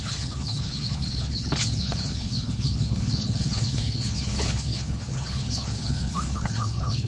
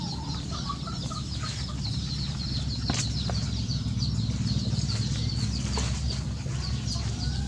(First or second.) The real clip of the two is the second